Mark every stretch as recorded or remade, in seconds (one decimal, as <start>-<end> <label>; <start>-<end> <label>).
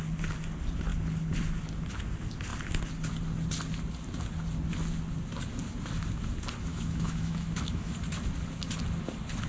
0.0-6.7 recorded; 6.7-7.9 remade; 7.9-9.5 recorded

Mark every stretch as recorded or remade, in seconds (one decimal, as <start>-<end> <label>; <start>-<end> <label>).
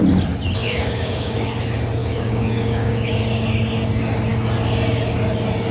0.0-0.6 recorded; 0.6-1.5 remade; 1.5-2.0 recorded; 2.0-3.1 remade; 3.1-5.7 recorded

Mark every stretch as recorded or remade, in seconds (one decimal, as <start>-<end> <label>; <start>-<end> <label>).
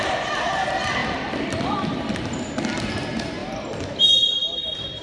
0.0-1.0 recorded; 1.0-2.9 remade; 2.9-3.4 recorded; 3.4-4.2 remade; 4.2-5.0 recorded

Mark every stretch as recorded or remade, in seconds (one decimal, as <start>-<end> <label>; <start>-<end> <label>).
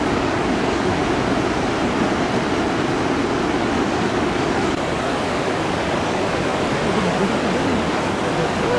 0.0-0.9 remade; 0.9-3.6 recorded; 3.6-8.8 remade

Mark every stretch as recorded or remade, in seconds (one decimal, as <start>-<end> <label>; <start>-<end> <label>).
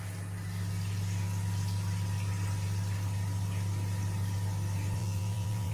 0.0-5.0 recorded; 5.0-5.7 remade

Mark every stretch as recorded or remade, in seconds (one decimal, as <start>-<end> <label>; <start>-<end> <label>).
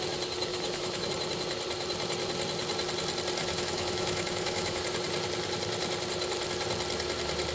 0.0-0.5 recorded; 0.5-1.1 remade; 1.1-3.4 recorded; 3.4-4.8 remade; 4.8-7.5 recorded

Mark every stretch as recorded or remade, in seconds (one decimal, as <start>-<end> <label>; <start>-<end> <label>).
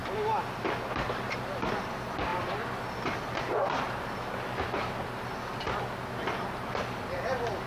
0.0-7.7 recorded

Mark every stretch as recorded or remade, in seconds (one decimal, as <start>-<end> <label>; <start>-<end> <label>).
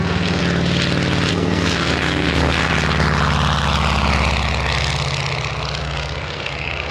0.0-0.4 remade; 0.4-1.3 recorded; 1.3-2.7 remade; 2.7-5.8 recorded; 5.8-6.9 remade